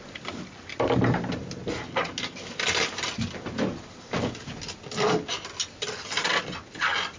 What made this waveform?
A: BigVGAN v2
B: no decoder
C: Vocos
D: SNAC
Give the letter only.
B